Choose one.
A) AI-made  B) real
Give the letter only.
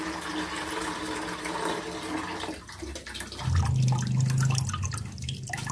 B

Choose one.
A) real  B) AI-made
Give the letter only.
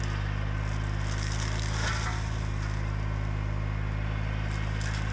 A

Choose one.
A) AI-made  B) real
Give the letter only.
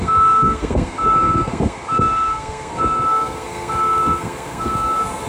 A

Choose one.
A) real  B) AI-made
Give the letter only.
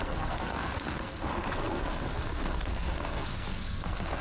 B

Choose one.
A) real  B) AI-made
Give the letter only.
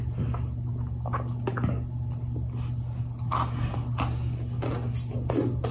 A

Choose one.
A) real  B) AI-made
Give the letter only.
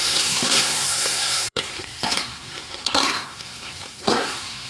B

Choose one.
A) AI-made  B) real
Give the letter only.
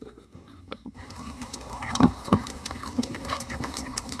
A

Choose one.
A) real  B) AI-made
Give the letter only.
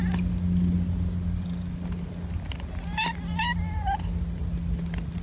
A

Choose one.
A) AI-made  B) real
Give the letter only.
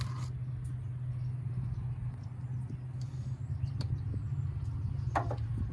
B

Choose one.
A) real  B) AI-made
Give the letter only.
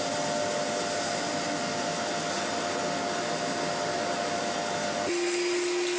A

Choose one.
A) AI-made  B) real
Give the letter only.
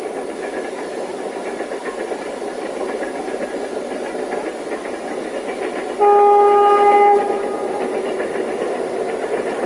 B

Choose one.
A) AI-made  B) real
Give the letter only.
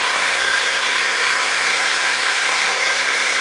A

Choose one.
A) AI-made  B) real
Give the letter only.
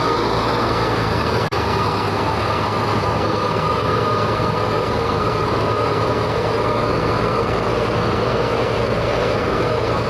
A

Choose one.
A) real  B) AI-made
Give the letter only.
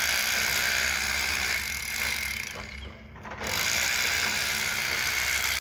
A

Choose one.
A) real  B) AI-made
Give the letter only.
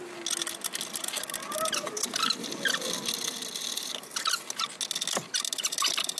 A